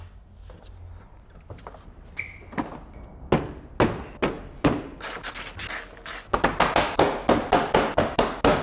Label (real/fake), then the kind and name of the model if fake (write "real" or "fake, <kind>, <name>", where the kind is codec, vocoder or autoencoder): real